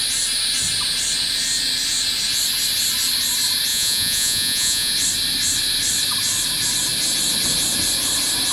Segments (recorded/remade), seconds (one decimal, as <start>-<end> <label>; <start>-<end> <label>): 0.0-3.7 recorded; 3.7-4.9 remade; 4.9-8.5 recorded